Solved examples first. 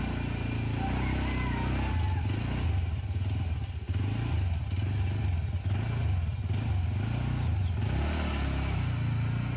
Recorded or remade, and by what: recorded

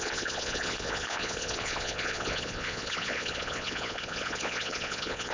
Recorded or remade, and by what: remade, vocoder, Vocos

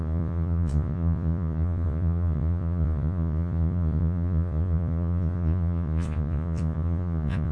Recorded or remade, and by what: remade, vocoder, Vocos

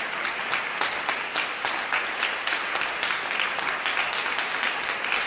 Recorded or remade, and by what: recorded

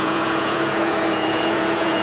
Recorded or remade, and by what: remade, vocoder, Vocos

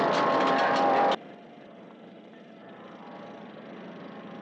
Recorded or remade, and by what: recorded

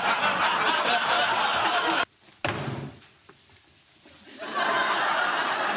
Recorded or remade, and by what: recorded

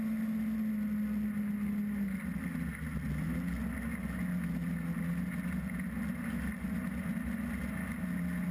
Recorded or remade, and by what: recorded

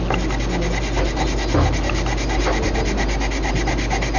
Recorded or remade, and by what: recorded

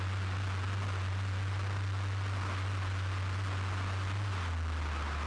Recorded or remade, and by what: recorded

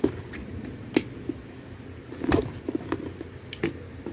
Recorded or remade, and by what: recorded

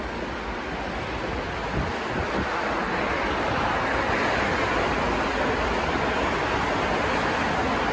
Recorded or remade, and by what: recorded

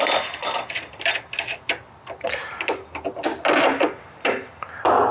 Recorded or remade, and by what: recorded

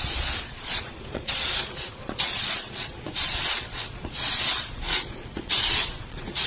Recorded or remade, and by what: remade, vocoder, Vocos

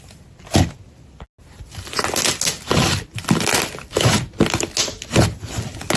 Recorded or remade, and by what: recorded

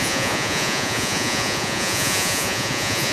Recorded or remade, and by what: remade, vocoder, Vocos